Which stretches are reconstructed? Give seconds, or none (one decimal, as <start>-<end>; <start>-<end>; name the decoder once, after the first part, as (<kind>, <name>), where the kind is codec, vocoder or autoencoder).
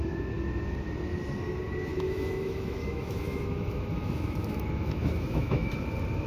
1.9-5.7 (autoencoder, DAC-VAE)